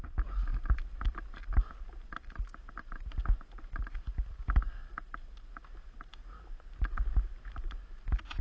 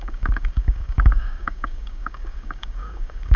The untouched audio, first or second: first